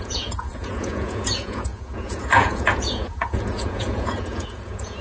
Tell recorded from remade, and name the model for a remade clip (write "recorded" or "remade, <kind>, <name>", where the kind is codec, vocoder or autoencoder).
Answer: remade, vocoder, Vocos